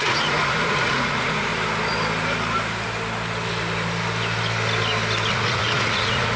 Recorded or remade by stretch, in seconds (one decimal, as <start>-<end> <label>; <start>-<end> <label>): 0.0-1.5 remade; 1.5-5.3 recorded; 5.3-6.4 remade